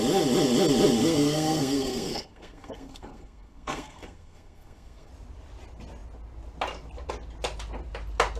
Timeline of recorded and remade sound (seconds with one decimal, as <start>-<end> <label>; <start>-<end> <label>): 0.0-1.0 recorded; 1.0-5.1 remade; 5.1-8.4 recorded

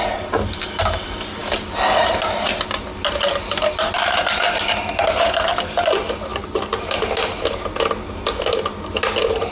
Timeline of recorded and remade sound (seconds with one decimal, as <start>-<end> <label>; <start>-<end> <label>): 0.0-6.3 recorded; 6.3-7.5 remade; 7.5-9.5 recorded

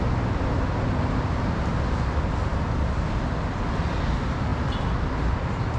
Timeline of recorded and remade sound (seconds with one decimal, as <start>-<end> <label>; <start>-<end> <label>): 0.0-5.8 recorded

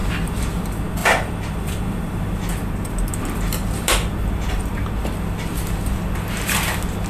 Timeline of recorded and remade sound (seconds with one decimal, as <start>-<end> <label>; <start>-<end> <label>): 0.0-0.5 remade; 0.5-1.0 recorded; 1.0-4.9 remade; 4.9-7.1 recorded

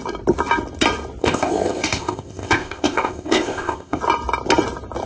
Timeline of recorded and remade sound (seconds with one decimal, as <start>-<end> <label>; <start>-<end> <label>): 0.0-1.2 recorded; 1.2-4.0 remade; 4.0-5.1 recorded

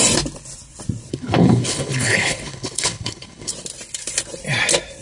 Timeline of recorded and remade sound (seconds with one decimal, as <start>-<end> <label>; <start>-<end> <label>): 0.0-1.1 recorded; 1.1-3.5 remade; 3.5-5.0 recorded